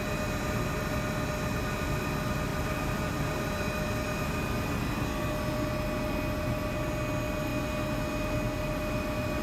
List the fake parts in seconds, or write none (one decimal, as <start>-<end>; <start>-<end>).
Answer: 2.5-3.6